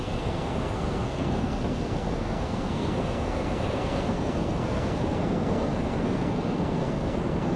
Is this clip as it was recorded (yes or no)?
no